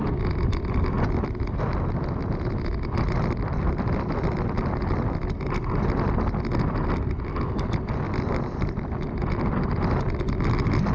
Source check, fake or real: real